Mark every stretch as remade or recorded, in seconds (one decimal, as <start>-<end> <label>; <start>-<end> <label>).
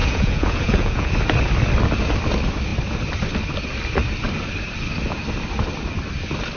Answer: 0.0-1.1 remade; 1.1-6.6 recorded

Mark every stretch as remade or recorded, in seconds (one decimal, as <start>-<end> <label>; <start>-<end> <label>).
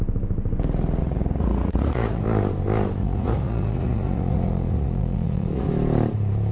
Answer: 0.0-1.0 recorded; 1.0-2.2 remade; 2.2-3.0 recorded; 3.0-5.7 remade; 5.7-6.5 recorded